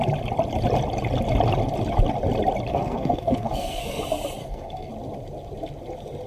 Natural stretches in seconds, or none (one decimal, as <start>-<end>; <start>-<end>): 0.0-2.7; 4.0-4.4; 4.9-6.3